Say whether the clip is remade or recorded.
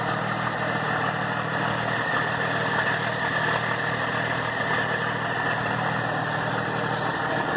recorded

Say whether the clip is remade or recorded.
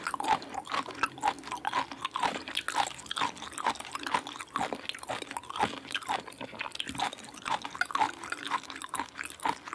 recorded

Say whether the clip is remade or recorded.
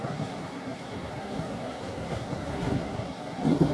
remade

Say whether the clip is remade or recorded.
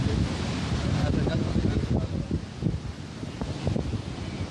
recorded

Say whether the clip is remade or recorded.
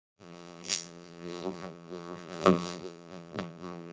remade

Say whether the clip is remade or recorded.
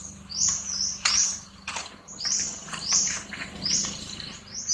remade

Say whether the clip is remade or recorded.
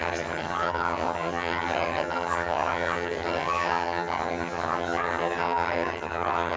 remade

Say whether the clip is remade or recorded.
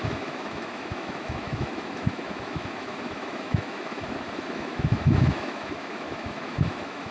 remade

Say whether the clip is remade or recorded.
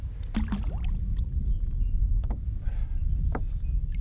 recorded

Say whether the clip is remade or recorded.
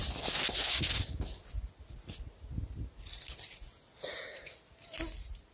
recorded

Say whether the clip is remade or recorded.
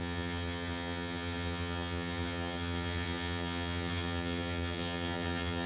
remade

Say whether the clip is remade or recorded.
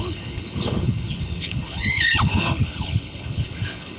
remade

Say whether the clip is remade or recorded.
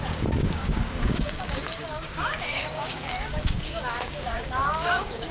remade